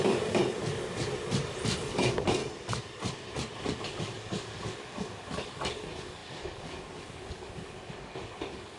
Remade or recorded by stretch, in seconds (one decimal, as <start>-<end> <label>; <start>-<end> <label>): 0.0-0.4 remade; 0.4-1.8 recorded; 1.8-2.4 remade; 2.4-3.6 recorded; 3.6-8.8 remade